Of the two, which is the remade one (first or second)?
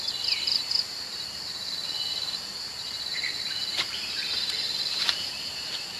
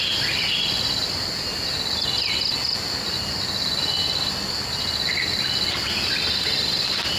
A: first